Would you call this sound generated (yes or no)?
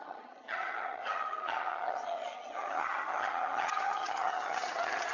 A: yes